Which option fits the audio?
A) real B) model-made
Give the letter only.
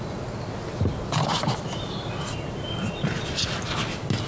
A